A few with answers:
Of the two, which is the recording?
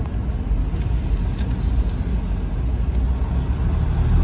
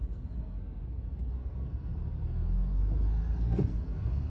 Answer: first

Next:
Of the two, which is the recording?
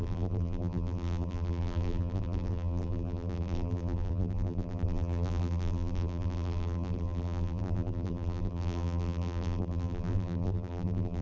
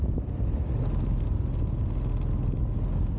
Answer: second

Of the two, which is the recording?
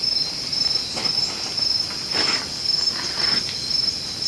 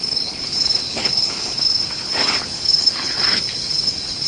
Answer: first